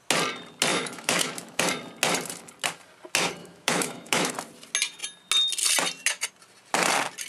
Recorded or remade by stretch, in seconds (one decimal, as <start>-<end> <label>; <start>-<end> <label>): 0.0-0.7 recorded; 0.7-1.6 remade; 1.6-3.4 recorded; 3.4-4.3 remade; 4.3-7.3 recorded

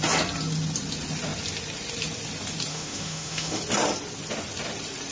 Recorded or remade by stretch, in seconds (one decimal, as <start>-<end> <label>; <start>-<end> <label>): 0.0-2.7 recorded; 2.7-3.6 remade; 3.6-5.1 recorded

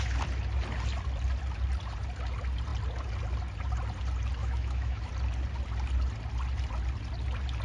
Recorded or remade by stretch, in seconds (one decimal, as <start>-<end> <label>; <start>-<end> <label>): 0.0-4.4 recorded; 4.4-5.1 remade; 5.1-7.6 recorded

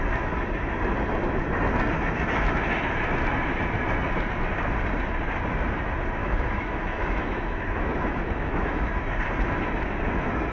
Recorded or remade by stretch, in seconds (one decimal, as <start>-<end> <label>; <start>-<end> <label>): 0.0-6.2 recorded; 6.2-8.9 remade; 8.9-10.5 recorded

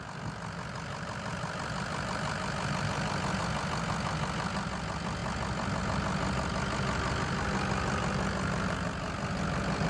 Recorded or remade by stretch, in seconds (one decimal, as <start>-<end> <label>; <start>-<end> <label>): 0.0-9.9 recorded

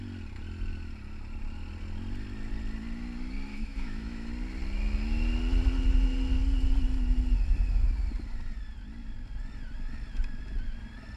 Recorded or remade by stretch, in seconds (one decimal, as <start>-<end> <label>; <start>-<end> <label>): 0.0-3.5 recorded; 3.5-4.3 remade; 4.3-11.2 recorded